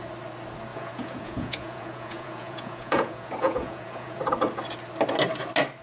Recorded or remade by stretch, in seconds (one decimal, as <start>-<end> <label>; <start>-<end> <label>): 0.0-0.7 recorded; 0.7-4.2 remade; 4.2-5.8 recorded